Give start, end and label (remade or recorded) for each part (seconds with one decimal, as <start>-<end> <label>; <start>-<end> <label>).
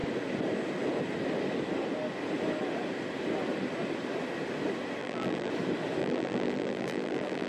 0.0-5.0 recorded; 5.0-5.5 remade; 5.5-6.0 recorded; 6.0-7.5 remade